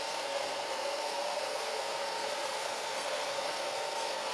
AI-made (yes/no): yes